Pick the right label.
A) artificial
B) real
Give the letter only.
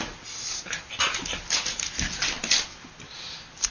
B